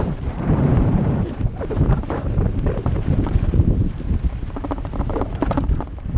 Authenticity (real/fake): fake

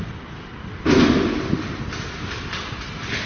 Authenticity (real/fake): real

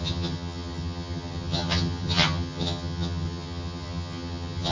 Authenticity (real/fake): fake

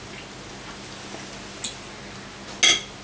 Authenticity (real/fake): real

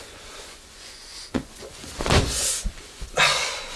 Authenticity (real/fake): fake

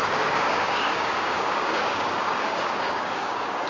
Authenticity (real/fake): fake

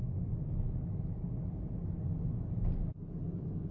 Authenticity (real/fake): real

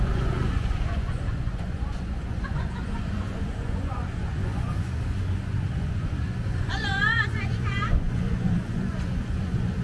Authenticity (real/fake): fake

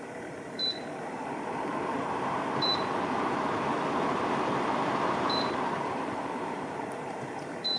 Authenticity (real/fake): fake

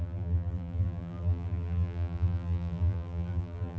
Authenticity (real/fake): fake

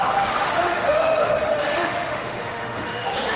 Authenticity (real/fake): fake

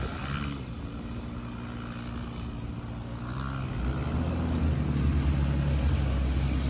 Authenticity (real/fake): real